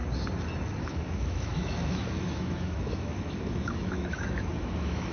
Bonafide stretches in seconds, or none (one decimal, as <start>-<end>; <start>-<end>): 0.0-0.8